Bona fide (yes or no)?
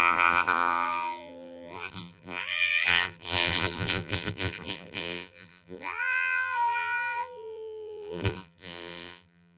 no